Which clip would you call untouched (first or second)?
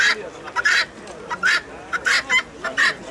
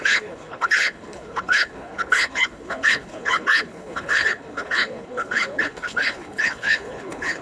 first